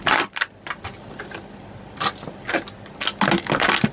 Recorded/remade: recorded